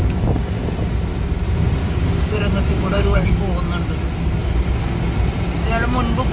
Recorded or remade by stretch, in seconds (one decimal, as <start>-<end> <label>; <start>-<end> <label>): 0.0-1.8 recorded; 1.8-2.3 remade; 2.3-2.7 recorded; 2.7-3.4 remade; 3.4-4.4 recorded; 4.4-5.0 remade; 5.0-6.3 recorded